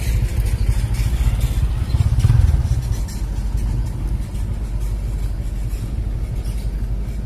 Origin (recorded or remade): recorded